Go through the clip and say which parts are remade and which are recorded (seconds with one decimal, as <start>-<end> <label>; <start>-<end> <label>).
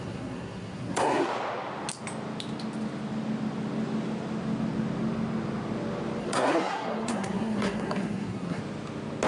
0.0-1.3 remade; 1.3-6.2 recorded; 6.2-8.6 remade; 8.6-9.3 recorded